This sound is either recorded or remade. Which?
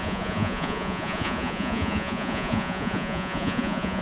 remade